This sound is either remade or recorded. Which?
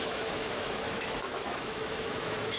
remade